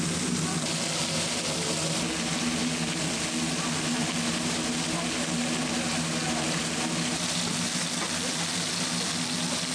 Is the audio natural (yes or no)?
yes